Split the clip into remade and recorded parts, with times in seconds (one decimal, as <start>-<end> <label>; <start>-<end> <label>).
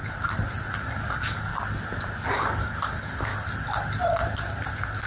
0.0-0.8 recorded; 0.8-1.5 remade; 1.5-2.3 recorded; 2.3-3.3 remade; 3.3-5.1 recorded